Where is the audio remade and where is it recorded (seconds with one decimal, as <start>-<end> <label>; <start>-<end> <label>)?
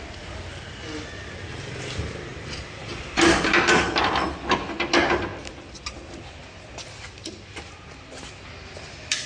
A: 0.0-9.3 recorded